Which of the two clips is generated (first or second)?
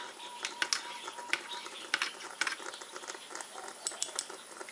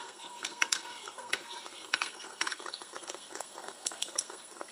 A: second